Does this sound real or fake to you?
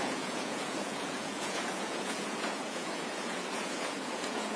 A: fake